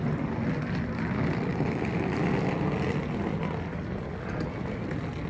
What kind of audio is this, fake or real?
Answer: real